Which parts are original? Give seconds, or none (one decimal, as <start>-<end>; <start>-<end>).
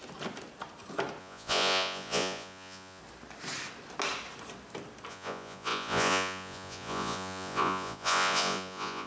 0.0-1.2; 3.0-5.1